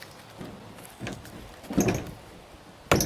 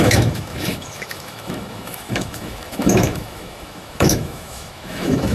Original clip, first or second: first